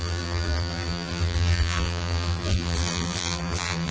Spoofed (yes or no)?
yes